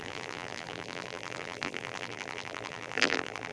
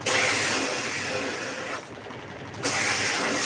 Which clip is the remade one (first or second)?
first